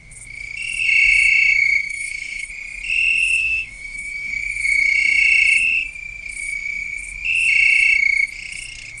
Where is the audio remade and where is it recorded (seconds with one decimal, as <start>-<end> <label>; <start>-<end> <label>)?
0.0-1.8 recorded; 1.8-2.5 remade; 2.5-3.4 recorded; 3.4-4.3 remade; 4.3-9.0 recorded